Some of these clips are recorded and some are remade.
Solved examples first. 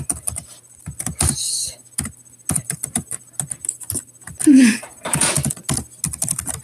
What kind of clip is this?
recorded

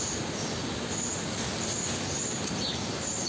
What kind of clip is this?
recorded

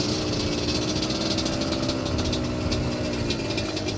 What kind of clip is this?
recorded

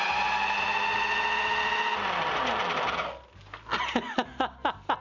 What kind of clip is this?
recorded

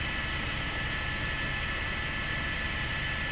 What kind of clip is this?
recorded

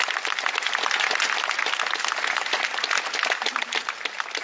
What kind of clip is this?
recorded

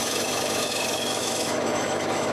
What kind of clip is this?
remade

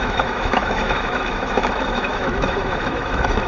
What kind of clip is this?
remade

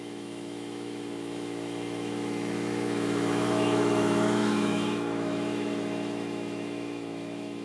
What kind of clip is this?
remade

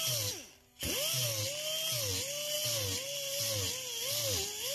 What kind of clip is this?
recorded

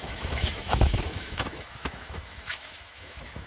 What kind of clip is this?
remade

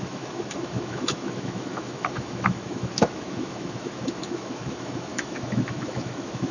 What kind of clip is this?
remade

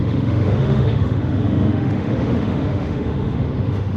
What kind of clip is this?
remade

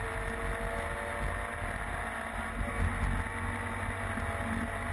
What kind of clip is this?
recorded